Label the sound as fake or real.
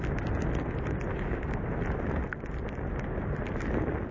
real